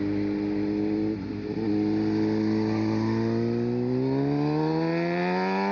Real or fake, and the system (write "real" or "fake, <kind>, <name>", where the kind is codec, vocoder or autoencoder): real